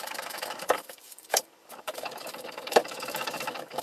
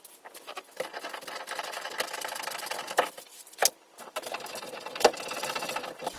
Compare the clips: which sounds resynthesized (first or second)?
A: first